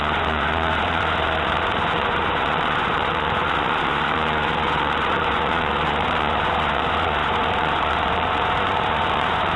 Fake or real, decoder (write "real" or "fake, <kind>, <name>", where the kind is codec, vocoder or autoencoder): fake, vocoder, Vocos